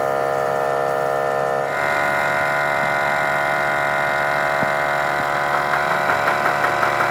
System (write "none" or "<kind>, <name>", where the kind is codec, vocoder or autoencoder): none